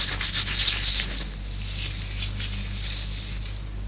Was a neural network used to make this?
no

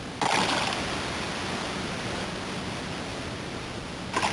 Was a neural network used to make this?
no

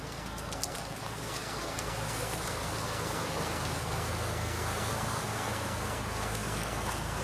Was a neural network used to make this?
yes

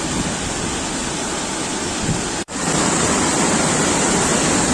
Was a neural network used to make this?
no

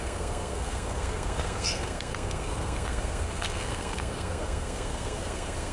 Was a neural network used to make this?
yes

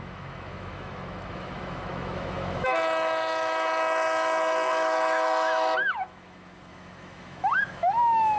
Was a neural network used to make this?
yes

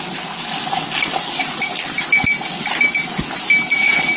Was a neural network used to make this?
no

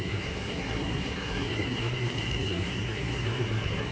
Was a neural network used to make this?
yes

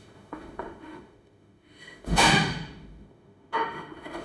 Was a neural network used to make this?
yes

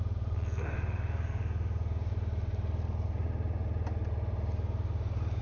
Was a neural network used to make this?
no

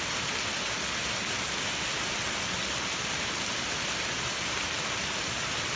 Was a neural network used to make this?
no